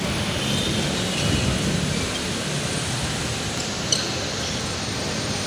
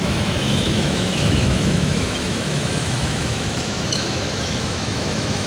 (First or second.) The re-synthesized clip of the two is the second